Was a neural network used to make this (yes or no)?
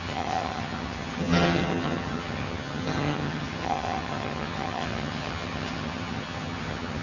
yes